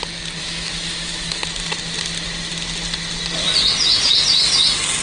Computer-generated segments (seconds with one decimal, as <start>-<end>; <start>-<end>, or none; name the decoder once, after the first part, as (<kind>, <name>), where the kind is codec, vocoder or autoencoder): 0.4-1.4 (autoencoder, DAC-VAE)